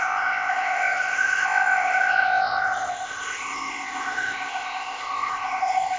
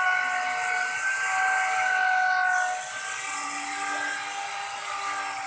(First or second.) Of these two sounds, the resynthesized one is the first